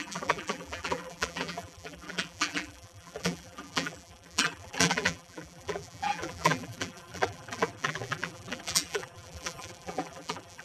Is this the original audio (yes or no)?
no